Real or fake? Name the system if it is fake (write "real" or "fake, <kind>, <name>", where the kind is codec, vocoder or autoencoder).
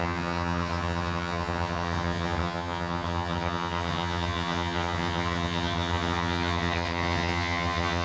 fake, vocoder, HiFi-GAN